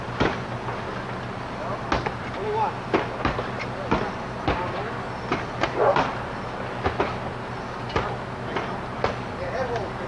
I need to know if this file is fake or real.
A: real